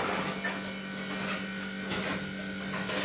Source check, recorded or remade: recorded